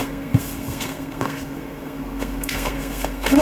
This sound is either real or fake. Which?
fake